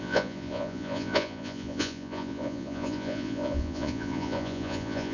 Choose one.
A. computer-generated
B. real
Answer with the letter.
A